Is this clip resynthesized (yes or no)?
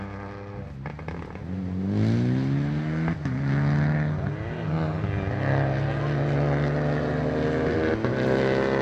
no